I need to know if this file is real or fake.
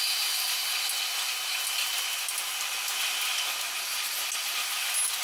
real